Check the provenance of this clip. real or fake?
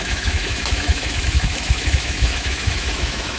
fake